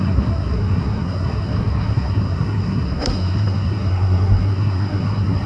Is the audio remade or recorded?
remade